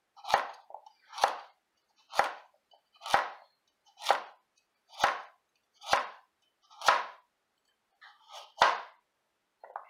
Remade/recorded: recorded